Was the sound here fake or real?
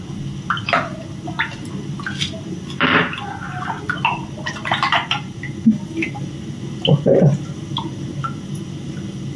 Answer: real